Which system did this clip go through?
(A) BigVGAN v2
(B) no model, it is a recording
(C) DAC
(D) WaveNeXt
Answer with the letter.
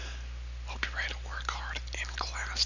B